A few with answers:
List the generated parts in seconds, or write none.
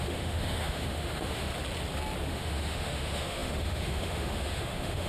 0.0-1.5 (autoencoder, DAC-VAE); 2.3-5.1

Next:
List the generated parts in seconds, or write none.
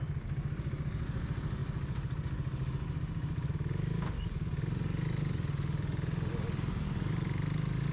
none